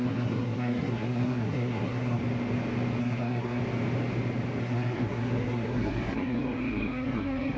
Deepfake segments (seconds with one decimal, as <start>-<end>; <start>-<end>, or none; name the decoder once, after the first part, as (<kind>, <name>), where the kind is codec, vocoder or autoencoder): 0.0-2.2 (codec, SNAC); 3.0-3.6; 4.6-7.6